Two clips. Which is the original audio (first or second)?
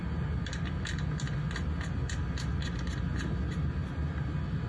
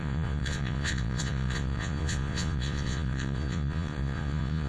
first